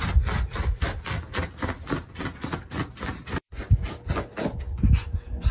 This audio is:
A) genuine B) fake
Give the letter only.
A